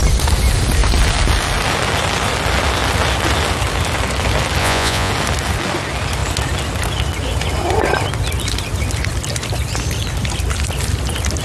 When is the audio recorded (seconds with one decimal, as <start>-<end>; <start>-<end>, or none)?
0.0-4.6; 5.1-11.4